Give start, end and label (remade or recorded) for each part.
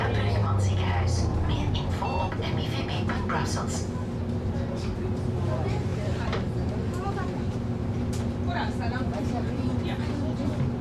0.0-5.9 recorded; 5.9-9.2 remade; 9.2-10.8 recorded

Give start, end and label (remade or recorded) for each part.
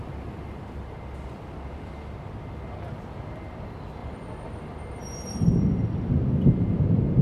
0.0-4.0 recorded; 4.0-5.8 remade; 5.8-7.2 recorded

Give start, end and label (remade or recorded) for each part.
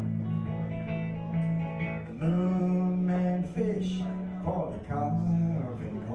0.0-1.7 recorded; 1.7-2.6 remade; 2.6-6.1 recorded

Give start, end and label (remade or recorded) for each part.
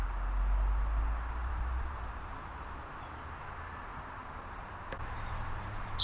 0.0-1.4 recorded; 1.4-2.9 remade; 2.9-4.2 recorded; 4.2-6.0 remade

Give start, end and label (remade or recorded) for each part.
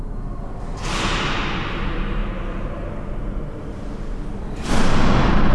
0.0-5.5 recorded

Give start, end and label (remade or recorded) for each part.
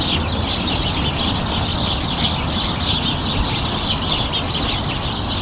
0.0-1.7 recorded; 1.7-4.9 remade; 4.9-5.4 recorded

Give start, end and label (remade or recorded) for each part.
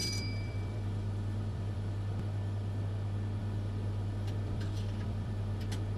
0.0-2.8 remade; 2.8-3.4 recorded; 3.4-5.6 remade; 5.6-6.0 recorded